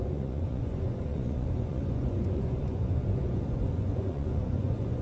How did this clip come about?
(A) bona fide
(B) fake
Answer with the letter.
B